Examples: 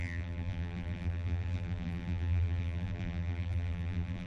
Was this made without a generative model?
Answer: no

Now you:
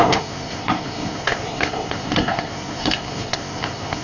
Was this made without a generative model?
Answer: no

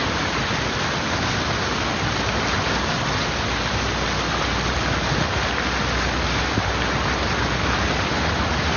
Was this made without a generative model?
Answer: yes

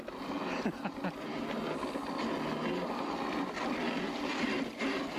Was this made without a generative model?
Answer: yes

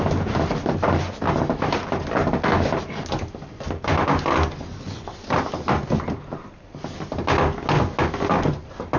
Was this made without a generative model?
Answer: yes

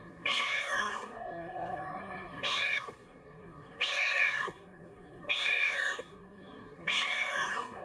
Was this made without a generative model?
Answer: no